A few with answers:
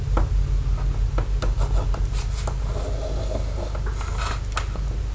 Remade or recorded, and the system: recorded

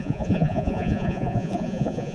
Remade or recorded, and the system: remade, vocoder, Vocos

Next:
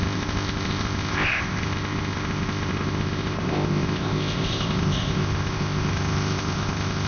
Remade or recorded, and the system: remade, codec, ZipCodec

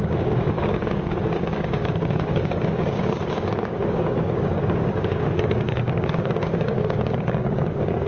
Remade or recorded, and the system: remade, codec, DAC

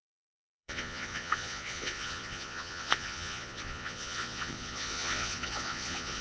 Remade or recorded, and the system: remade, vocoder, Vocos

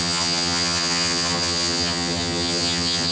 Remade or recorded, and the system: remade, vocoder, HiFi-GAN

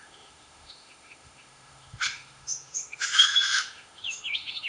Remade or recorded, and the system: remade, autoencoder, DAC-VAE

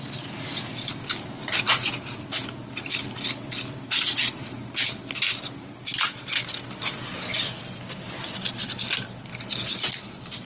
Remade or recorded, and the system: recorded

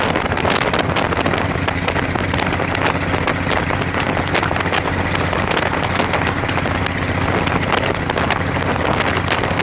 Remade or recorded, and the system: recorded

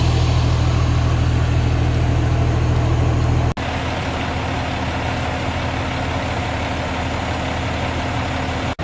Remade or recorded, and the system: recorded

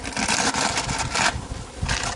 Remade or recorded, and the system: recorded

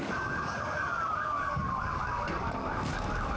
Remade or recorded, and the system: remade, codec, DAC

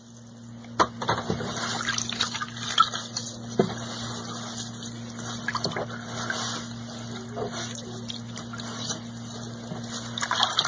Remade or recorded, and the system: recorded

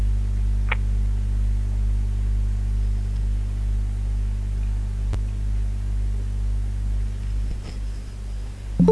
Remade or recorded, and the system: recorded